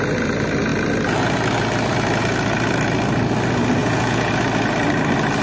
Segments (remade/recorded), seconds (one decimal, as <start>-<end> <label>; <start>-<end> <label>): 0.0-3.8 recorded; 3.8-4.3 remade; 4.3-5.4 recorded